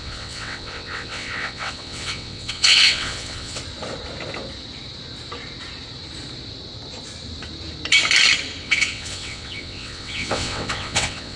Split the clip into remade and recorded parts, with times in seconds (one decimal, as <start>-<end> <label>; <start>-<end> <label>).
0.0-3.6 remade; 3.6-8.6 recorded; 8.6-11.4 remade

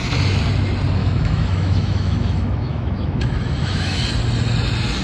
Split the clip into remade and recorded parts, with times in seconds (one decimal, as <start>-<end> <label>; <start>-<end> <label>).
0.0-1.0 recorded; 1.0-4.0 remade; 4.0-5.0 recorded